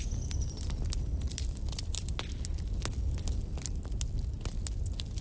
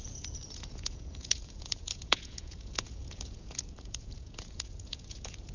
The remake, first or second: second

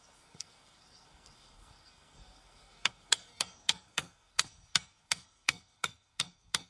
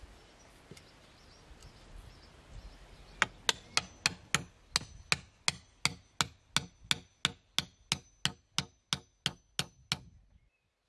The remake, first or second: first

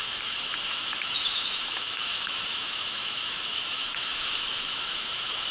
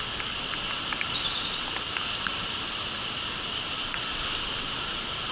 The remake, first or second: first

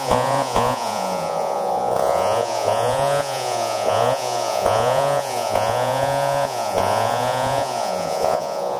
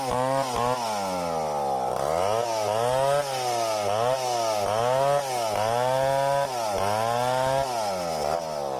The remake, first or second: first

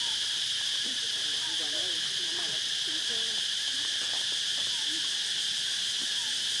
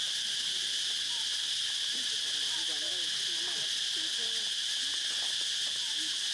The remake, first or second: first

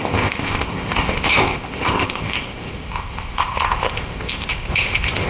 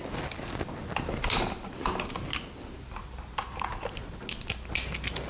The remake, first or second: first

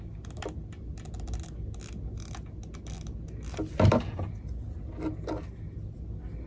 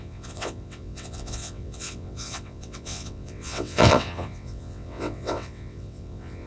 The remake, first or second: second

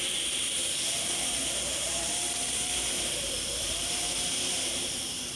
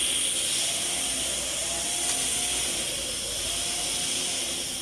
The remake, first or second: first